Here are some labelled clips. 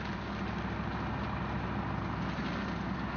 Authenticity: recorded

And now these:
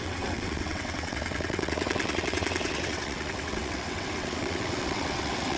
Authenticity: remade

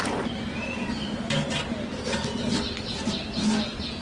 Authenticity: recorded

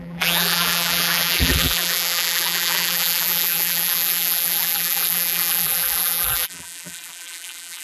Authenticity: remade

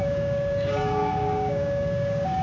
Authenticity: remade